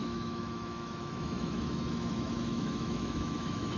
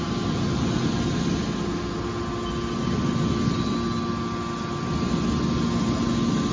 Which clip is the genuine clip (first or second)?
second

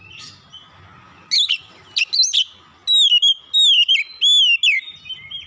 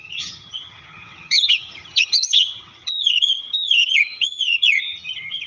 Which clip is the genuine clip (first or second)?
first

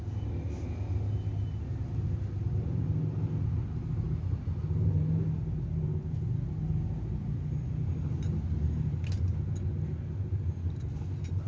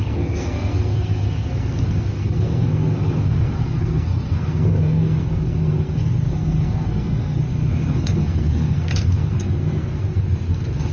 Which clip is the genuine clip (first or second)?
first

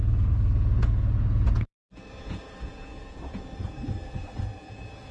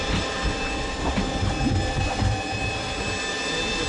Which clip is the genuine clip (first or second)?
second